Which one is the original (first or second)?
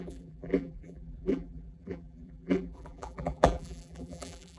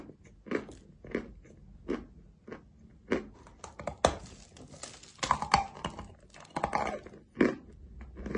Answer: second